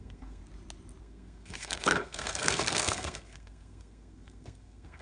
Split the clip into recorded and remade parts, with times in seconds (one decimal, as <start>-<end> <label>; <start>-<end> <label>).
0.0-0.4 remade; 0.4-1.0 recorded; 1.0-5.0 remade